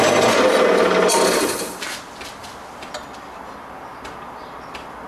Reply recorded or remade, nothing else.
recorded